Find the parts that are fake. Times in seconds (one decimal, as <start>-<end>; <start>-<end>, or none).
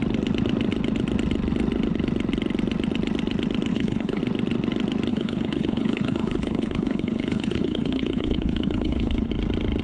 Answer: 3.7-4.2; 5.1-9.3